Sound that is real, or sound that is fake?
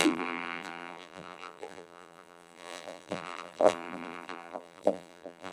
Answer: fake